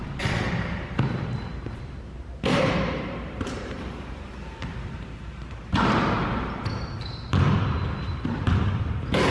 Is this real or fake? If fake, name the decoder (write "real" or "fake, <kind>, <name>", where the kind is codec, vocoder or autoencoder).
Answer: fake, vocoder, BigVGAN v2